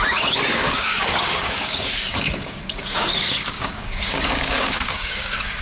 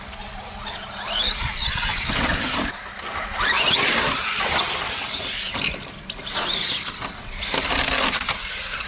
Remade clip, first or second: first